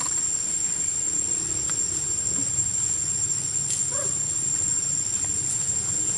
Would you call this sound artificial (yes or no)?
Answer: no